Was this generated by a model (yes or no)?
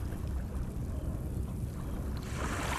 no